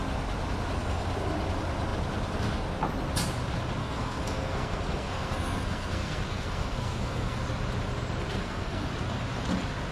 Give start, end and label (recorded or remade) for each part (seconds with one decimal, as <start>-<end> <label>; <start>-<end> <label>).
0.0-3.8 recorded; 3.8-7.4 remade; 7.4-8.3 recorded; 8.3-8.9 remade; 8.9-9.9 recorded